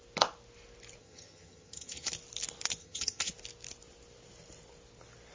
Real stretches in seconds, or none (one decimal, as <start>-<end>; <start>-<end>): 0.0-1.0; 2.1-2.8; 3.3-5.3